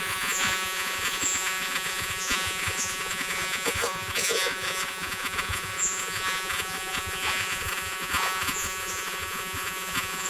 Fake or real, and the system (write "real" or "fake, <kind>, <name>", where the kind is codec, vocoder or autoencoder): fake, vocoder, Vocos